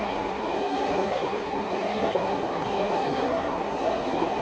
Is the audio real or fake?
fake